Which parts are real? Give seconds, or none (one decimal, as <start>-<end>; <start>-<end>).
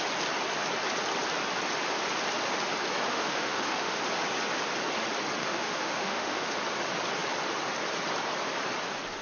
0.0-3.1; 4.0-5.4; 6.6-9.2